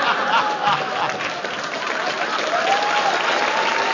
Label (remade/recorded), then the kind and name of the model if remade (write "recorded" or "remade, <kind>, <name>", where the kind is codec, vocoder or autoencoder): recorded